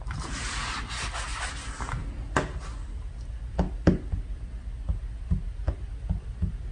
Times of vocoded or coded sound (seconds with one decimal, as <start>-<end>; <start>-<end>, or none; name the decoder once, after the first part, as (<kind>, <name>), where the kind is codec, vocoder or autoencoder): none